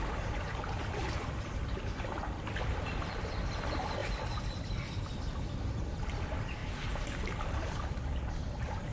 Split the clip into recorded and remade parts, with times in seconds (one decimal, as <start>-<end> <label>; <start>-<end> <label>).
0.0-6.6 remade; 6.6-7.7 recorded; 7.7-8.9 remade